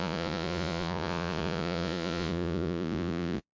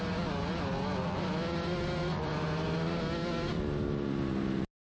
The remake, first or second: first